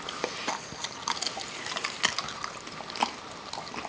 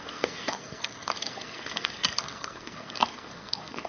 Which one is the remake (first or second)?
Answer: second